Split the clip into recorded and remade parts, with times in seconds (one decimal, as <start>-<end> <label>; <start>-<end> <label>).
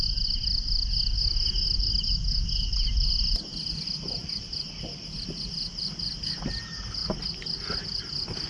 0.0-8.5 recorded